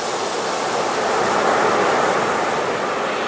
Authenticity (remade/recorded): recorded